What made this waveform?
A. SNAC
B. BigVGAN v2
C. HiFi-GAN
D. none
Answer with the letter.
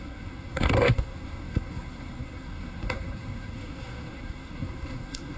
A